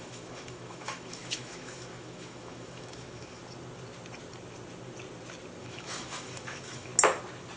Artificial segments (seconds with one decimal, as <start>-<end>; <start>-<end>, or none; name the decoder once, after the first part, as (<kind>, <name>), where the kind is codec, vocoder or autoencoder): 0.0-3.4 (autoencoder, DAC-VAE); 5.6-6.9